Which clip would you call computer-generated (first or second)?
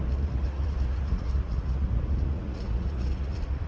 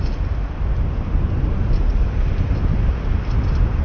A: first